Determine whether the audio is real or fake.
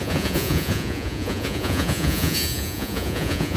fake